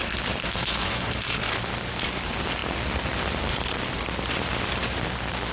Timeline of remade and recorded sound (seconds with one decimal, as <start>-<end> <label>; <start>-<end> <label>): 0.0-0.4 recorded; 0.4-1.5 remade; 1.5-5.5 recorded